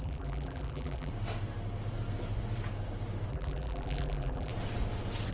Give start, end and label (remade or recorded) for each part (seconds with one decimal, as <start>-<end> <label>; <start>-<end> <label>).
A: 0.0-1.1 remade; 1.1-3.3 recorded; 3.3-4.5 remade; 4.5-5.3 recorded